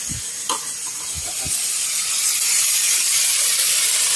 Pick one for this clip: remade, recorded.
recorded